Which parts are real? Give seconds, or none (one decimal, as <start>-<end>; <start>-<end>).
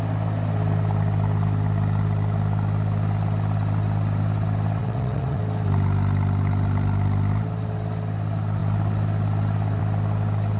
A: 0.0-4.8; 5.4-10.6